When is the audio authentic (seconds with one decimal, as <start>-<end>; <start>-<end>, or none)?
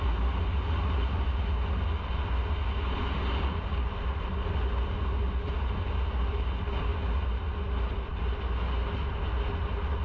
0.0-10.0